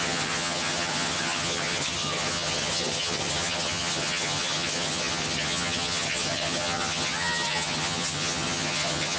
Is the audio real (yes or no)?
no